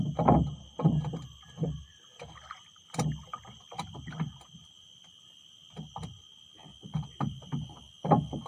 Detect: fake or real real